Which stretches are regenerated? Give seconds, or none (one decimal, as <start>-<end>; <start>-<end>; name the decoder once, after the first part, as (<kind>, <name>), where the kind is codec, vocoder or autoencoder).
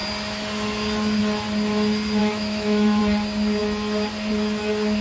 2.2-3.0 (autoencoder, DAC-VAE)